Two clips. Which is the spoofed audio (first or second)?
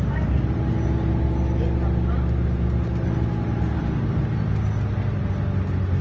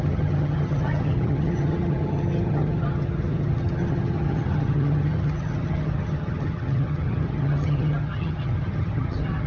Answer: second